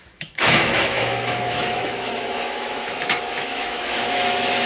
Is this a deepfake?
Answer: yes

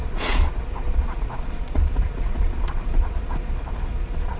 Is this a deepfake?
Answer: yes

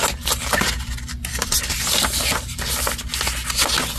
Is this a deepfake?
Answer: no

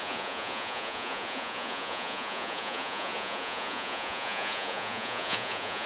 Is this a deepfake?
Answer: yes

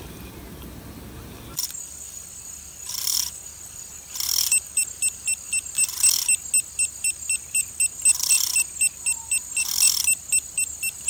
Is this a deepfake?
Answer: no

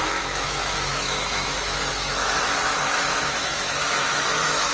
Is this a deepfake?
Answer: yes